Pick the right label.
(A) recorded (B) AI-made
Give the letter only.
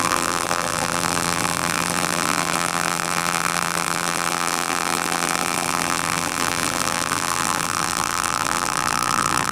B